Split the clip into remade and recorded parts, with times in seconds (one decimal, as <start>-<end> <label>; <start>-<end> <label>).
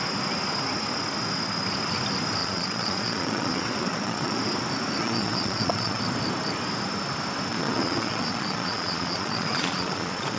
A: 0.0-2.4 recorded; 2.4-4.4 remade; 4.4-5.0 recorded; 5.0-6.0 remade; 6.0-7.5 recorded; 7.5-10.4 remade